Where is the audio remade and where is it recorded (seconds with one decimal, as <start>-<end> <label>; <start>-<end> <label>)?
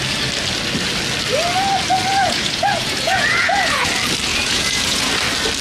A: 0.0-2.1 recorded; 2.1-3.9 remade; 3.9-4.3 recorded; 4.3-5.1 remade; 5.1-5.6 recorded